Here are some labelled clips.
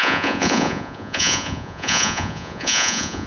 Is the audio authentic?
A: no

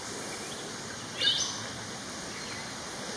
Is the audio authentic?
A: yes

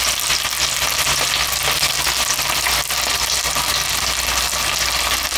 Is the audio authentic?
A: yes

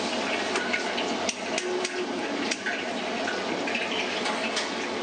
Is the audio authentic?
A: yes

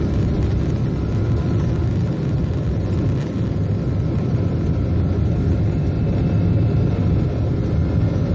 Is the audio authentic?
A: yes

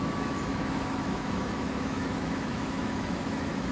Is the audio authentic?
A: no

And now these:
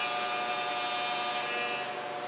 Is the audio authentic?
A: yes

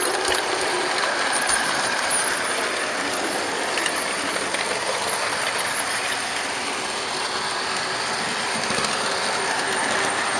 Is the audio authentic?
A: no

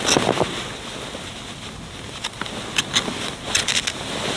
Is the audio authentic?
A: yes